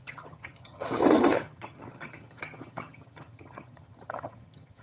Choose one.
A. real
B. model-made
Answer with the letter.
B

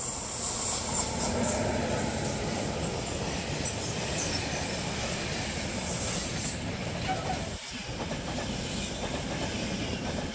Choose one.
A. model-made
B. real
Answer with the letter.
B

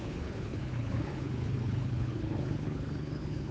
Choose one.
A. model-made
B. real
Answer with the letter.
A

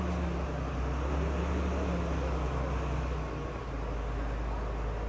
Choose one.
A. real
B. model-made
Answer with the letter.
A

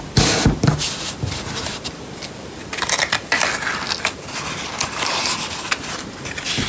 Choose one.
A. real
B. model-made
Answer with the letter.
A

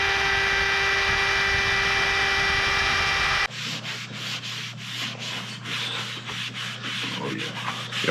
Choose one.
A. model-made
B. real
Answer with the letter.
B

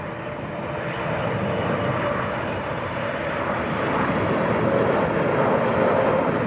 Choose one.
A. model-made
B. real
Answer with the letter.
B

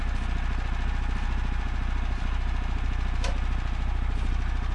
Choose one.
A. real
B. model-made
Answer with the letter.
A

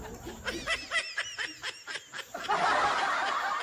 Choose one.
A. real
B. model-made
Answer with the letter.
A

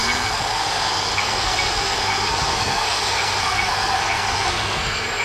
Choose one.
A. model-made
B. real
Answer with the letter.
A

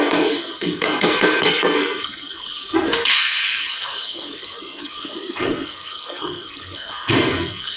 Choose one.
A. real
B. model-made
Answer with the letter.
B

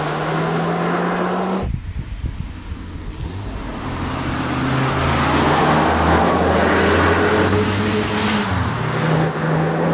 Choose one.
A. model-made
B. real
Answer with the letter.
B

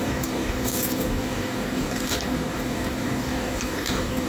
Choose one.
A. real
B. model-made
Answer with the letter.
B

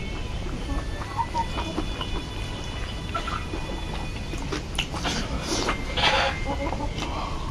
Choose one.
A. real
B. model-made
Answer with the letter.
A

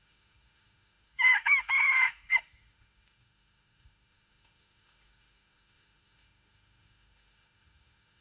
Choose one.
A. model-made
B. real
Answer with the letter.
A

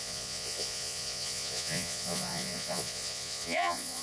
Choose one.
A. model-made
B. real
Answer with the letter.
A